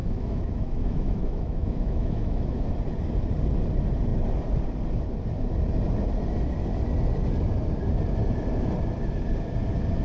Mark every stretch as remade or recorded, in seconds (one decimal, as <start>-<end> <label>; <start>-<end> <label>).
0.0-2.7 remade; 2.7-10.0 recorded